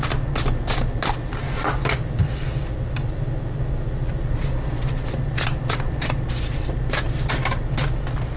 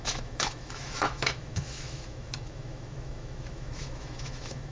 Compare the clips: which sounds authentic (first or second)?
first